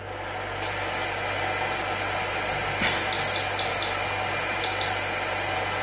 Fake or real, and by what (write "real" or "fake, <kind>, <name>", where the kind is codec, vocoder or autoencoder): real